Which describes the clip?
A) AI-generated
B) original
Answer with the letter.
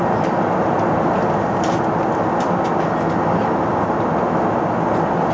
B